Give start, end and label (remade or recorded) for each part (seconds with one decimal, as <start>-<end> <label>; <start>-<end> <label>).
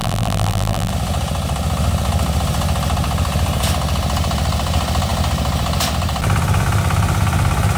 0.0-0.9 remade; 0.9-7.8 recorded